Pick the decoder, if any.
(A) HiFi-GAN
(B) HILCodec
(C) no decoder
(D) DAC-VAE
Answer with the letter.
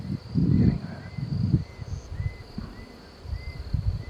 C